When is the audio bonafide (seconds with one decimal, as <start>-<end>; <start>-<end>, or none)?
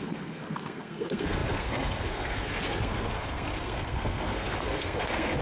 none